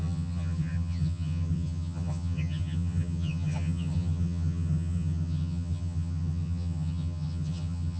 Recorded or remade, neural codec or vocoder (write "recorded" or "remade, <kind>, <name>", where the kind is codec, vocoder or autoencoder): remade, vocoder, HiFi-GAN